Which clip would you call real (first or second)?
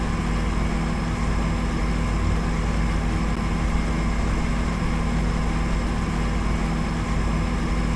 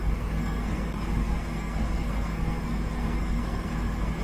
first